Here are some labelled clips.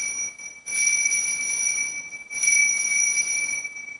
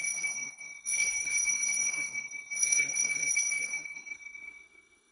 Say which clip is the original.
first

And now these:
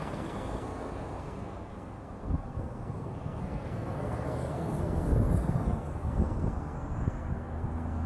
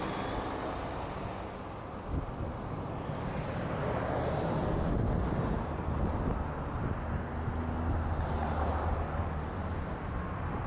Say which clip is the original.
second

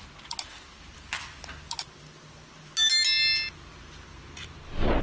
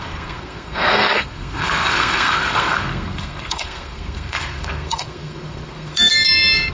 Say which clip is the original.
first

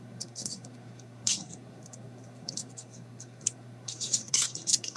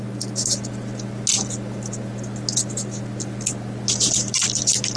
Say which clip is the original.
second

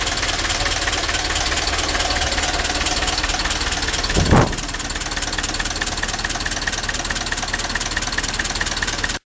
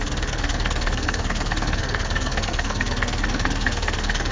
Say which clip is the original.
first